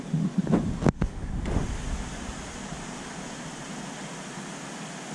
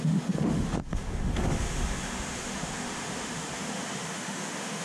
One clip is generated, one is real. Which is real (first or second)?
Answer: first